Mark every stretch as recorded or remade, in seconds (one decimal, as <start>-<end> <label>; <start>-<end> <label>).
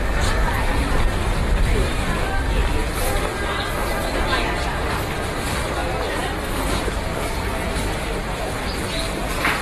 0.0-9.6 recorded